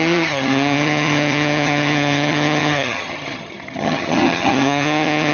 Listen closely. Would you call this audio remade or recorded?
remade